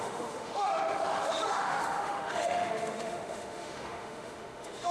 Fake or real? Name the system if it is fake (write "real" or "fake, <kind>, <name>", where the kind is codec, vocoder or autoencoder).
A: fake, autoencoder, DAC-VAE